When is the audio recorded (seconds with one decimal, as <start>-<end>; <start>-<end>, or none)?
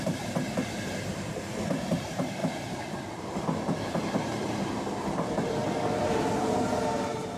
2.4-3.2; 5.6-6.3